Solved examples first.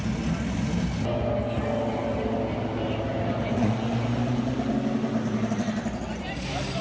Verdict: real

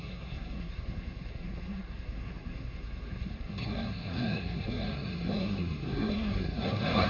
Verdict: fake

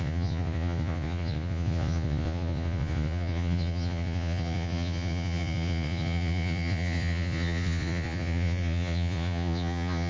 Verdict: fake